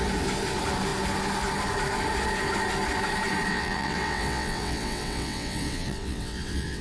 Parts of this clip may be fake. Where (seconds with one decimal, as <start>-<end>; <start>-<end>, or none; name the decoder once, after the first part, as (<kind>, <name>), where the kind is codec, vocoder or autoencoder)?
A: 3.5-6.8 (vocoder, WaveNeXt)

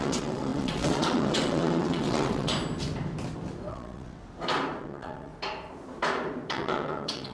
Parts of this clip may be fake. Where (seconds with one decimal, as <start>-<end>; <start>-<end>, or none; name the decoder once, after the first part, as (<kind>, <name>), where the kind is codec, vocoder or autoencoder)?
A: 0.0-2.5 (vocoder, WaveNeXt); 3.7-4.2; 4.8-5.3; 6.5-7.3